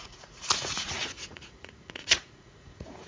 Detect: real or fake fake